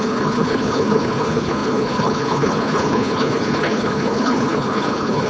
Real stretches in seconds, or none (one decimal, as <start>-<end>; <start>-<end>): none